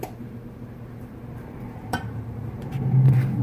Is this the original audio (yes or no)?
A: no